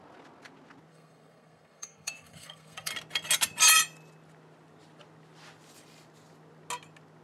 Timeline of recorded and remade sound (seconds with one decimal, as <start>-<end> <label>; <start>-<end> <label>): 0.0-0.9 recorded; 0.9-2.9 remade; 2.9-7.2 recorded